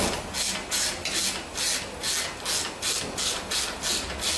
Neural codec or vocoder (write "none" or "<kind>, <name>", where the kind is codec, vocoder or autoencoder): none